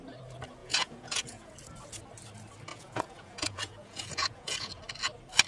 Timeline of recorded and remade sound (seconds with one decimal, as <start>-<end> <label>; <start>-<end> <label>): 0.0-0.6 recorded; 0.6-1.5 remade; 1.5-2.7 recorded; 2.7-4.8 remade; 4.8-5.5 recorded